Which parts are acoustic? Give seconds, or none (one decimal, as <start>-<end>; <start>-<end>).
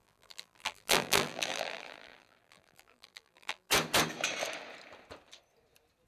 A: 3.7-6.1